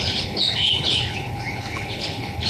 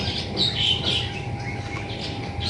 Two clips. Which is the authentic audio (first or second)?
second